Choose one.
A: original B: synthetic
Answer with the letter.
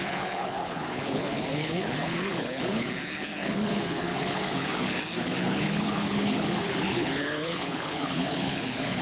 B